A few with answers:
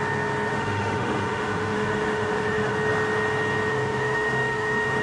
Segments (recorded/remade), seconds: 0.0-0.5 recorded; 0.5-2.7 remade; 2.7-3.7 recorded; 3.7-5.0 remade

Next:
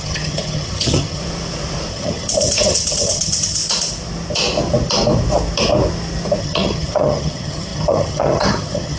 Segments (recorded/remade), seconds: 0.0-1.2 remade; 1.2-1.9 recorded; 1.9-3.6 remade; 3.6-6.4 recorded; 6.4-9.0 remade

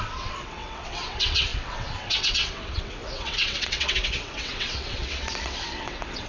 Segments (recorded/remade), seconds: 0.0-6.3 remade

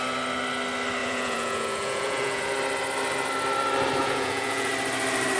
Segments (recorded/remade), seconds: 0.0-1.0 recorded; 1.0-2.4 remade; 2.4-4.0 recorded; 4.0-4.7 remade; 4.7-5.4 recorded